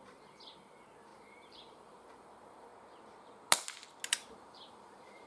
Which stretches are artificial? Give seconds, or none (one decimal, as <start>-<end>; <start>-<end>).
0.0-2.7; 4.1-5.3